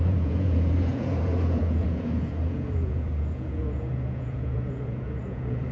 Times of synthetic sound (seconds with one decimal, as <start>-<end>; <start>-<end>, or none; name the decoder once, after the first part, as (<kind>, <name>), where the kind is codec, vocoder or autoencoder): 0.0-5.7 (vocoder, Vocos)

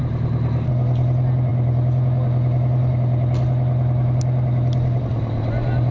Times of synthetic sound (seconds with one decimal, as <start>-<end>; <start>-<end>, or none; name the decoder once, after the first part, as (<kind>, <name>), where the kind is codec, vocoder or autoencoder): none